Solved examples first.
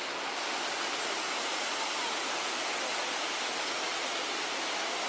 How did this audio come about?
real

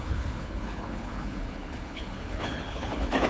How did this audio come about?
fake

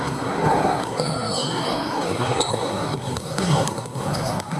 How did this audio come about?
fake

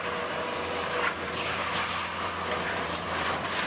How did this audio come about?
fake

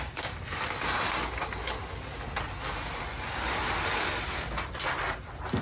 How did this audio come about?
real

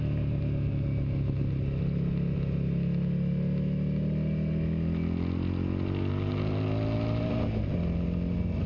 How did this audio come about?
real